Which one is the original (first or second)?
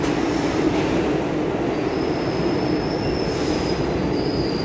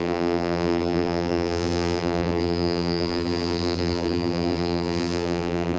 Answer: first